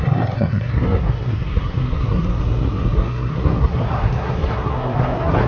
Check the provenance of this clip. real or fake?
fake